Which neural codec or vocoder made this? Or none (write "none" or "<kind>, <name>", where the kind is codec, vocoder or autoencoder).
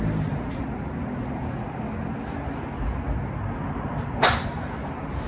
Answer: none